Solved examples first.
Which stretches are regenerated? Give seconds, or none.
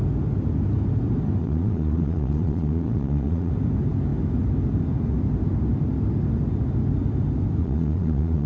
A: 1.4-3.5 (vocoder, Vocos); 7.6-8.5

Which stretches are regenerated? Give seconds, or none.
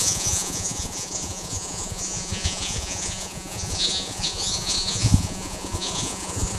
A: 0.0-6.6 (vocoder, Vocos)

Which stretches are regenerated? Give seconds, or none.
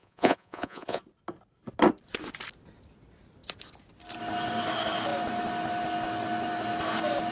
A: 0.0-1.0 (vocoder, Vocos)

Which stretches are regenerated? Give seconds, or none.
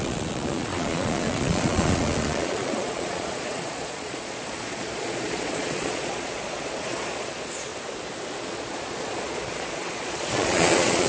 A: 0.0-7.7 (vocoder, Vocos); 8.4-11.1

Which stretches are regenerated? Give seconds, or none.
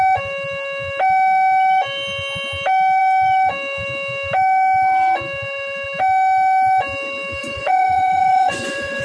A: 7.4-9.0 (vocoder, Vocos)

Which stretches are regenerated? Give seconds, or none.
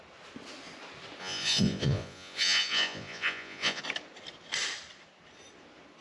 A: 1.2-3.8 (vocoder, Vocos)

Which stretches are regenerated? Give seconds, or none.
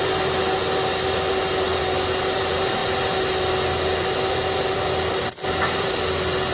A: none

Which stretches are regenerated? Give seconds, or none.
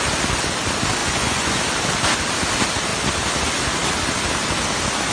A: 1.0-1.6 (vocoder, Vocos)